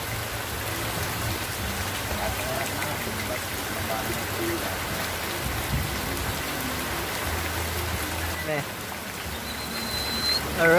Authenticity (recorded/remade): recorded